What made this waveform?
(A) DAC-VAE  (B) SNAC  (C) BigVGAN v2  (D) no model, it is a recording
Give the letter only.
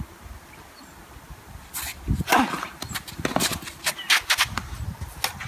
D